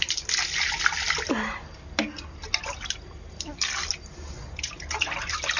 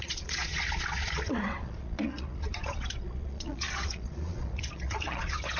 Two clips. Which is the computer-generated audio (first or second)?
second